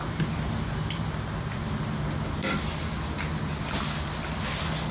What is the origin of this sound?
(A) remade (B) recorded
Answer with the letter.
B